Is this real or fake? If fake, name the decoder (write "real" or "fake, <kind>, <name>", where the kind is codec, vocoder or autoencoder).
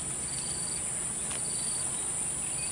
real